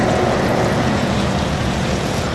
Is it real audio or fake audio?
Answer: fake